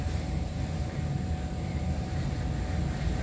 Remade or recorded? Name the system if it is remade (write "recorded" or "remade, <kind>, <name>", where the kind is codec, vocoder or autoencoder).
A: remade, vocoder, BigVGAN v2